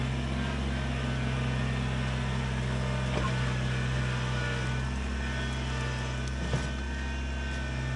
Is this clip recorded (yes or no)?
yes